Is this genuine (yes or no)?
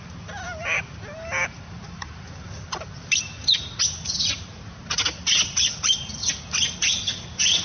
yes